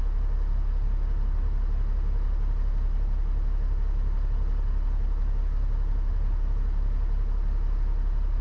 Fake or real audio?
real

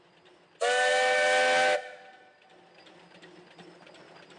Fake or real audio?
real